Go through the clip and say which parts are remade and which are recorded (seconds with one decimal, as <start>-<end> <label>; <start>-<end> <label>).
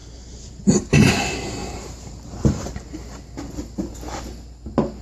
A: 0.0-1.1 remade; 1.1-1.6 recorded; 1.6-2.7 remade; 2.7-5.0 recorded